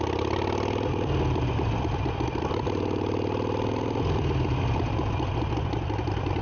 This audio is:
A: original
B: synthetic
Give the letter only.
A